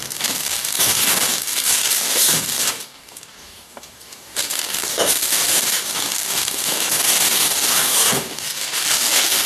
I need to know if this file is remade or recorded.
remade